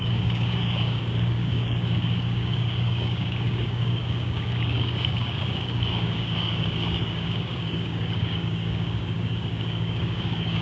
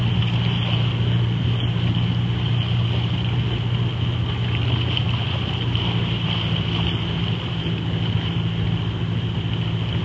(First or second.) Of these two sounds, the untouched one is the second